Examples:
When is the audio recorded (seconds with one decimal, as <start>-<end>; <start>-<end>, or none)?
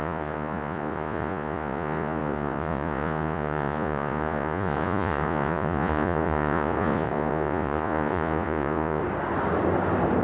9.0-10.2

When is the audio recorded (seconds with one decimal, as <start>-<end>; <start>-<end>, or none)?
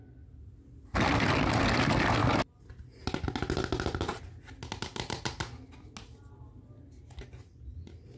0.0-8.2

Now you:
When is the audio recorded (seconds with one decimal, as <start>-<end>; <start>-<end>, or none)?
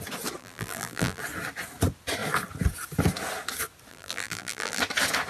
0.0-0.4; 1.2-3.9; 4.8-5.3